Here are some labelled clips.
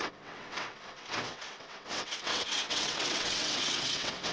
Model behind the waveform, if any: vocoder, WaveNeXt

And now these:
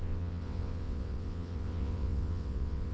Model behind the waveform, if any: vocoder, WaveNeXt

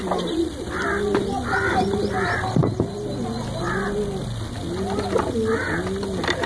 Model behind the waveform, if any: none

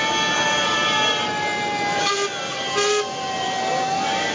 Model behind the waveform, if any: none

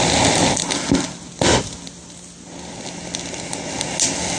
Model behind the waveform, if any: none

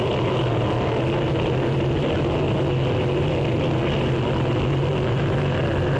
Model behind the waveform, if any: none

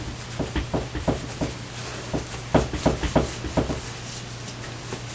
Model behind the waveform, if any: none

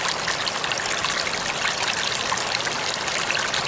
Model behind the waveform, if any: none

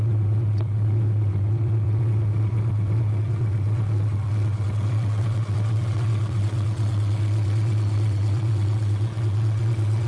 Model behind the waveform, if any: vocoder, WaveNeXt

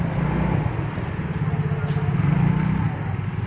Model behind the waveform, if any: none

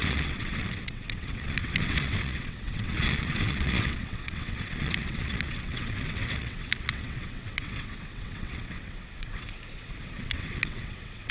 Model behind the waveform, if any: vocoder, WaveNeXt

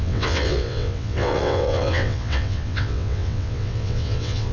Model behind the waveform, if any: vocoder, WaveNeXt